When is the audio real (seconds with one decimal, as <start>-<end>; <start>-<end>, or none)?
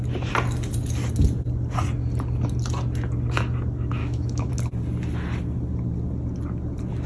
0.0-4.0; 4.5-7.1